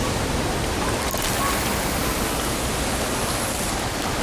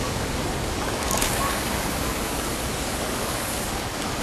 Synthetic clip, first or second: second